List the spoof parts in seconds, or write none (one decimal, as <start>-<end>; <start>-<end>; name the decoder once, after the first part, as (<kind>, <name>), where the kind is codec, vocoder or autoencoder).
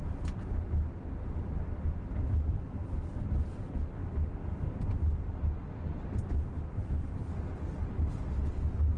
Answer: none